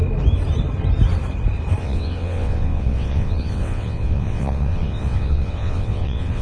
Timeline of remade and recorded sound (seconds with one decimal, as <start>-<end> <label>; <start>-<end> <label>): 0.0-1.8 recorded; 1.8-6.4 remade